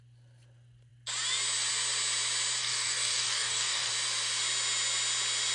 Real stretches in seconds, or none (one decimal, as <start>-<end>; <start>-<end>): 0.0-2.6; 3.9-5.5